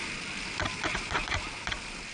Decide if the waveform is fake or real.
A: real